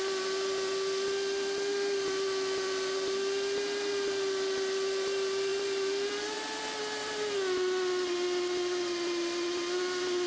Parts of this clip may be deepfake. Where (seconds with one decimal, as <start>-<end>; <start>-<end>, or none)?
none